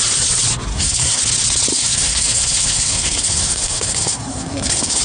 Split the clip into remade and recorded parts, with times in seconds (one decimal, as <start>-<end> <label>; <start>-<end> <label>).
0.0-0.7 recorded; 0.7-1.2 remade; 1.2-1.7 recorded; 1.7-5.0 remade